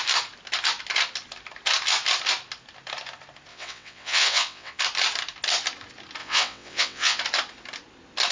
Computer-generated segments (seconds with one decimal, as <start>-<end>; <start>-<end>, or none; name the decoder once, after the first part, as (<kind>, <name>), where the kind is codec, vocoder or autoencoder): 3.5-4.8 (vocoder, WaveNeXt); 6.2-7.2